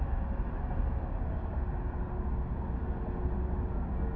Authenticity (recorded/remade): recorded